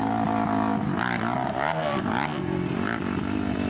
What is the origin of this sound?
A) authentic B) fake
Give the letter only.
A